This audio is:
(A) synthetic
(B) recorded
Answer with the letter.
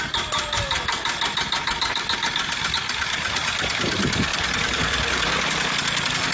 B